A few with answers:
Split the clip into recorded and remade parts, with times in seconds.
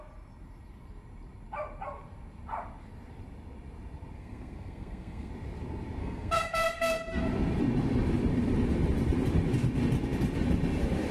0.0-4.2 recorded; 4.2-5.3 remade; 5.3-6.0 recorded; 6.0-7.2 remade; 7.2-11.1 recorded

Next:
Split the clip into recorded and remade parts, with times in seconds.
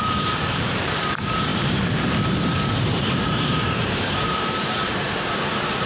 0.0-5.9 remade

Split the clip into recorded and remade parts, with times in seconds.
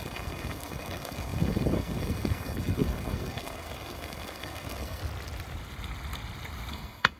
0.0-5.0 remade; 5.0-6.7 recorded; 6.7-7.2 remade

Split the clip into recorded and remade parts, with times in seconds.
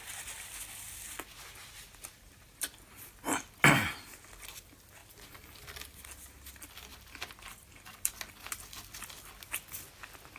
0.0-0.6 remade; 0.6-6.9 recorded; 6.9-8.1 remade; 8.1-10.4 recorded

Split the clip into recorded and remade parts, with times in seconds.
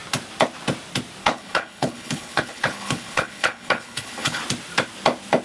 0.0-1.2 recorded; 1.2-4.4 remade; 4.4-5.4 recorded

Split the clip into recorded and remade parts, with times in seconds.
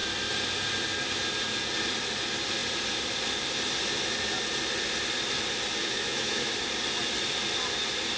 0.0-5.8 recorded; 5.8-6.5 remade; 6.5-8.2 recorded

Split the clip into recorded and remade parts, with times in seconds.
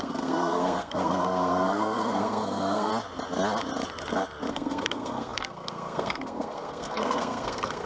0.0-2.9 remade; 2.9-4.5 recorded; 4.5-7.9 remade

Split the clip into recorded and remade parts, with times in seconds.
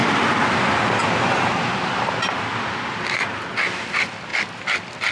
0.0-5.1 recorded